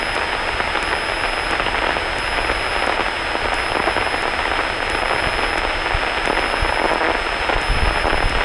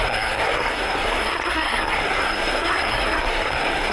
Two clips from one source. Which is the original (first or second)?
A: first